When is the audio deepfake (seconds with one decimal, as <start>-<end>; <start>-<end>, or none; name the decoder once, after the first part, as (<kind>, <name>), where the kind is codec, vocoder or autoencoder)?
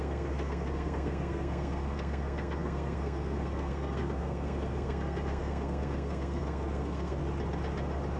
0.0-7.2 (codec, SNAC)